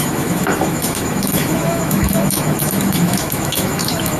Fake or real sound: fake